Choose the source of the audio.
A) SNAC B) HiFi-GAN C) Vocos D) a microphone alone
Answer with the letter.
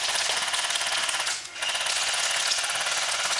C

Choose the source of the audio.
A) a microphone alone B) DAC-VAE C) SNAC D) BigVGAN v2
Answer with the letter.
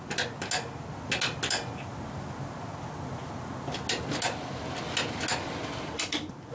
A